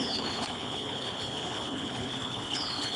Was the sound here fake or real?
fake